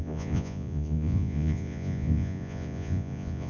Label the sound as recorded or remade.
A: remade